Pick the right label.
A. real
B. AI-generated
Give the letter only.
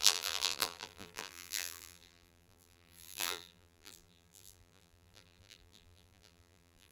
B